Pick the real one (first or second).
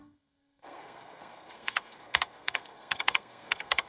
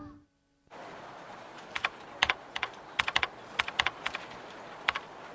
second